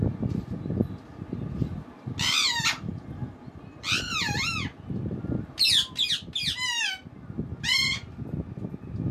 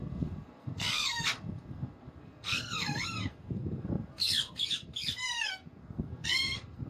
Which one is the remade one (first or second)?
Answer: second